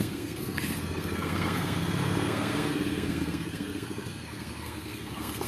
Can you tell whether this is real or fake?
fake